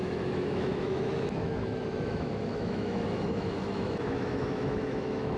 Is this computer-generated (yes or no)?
yes